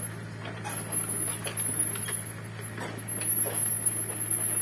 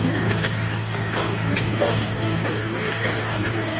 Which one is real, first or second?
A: first